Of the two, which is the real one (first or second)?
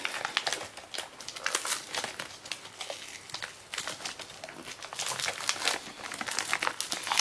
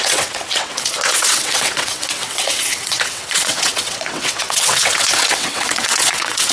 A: first